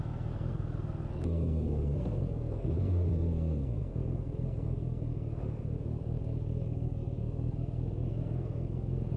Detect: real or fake fake